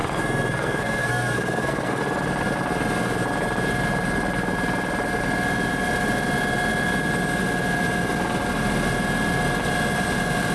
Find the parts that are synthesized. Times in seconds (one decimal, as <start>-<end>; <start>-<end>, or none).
0.0-2.0